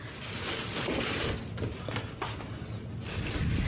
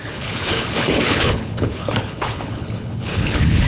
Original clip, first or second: first